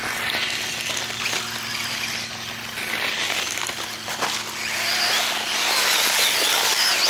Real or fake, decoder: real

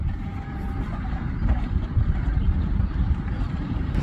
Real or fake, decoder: fake, vocoder, BigVGAN v2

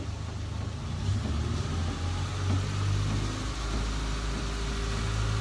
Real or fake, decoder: real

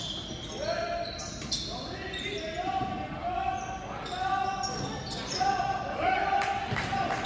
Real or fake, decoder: real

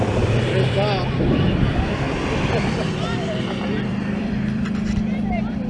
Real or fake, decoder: fake, vocoder, BigVGAN v2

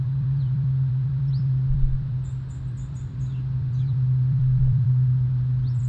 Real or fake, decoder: fake, vocoder, BigVGAN v2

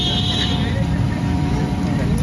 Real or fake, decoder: fake, vocoder, BigVGAN v2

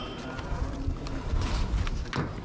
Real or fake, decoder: real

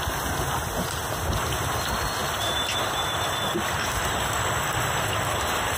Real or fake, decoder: real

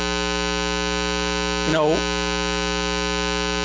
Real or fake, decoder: real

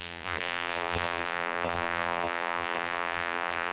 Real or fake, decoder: fake, vocoder, BigVGAN v2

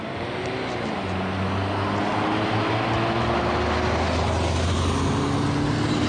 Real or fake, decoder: real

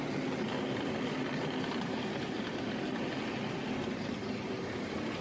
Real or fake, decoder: real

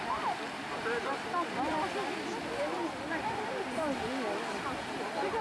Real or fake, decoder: fake, vocoder, BigVGAN v2